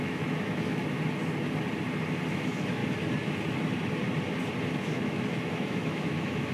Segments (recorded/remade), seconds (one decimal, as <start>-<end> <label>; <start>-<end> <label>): 0.0-0.8 remade; 0.8-2.3 recorded; 2.3-2.8 remade; 2.8-4.8 recorded; 4.8-6.5 remade